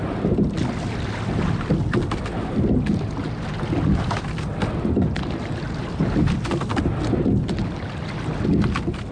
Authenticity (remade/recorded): recorded